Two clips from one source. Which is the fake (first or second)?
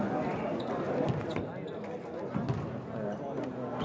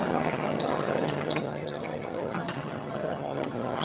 second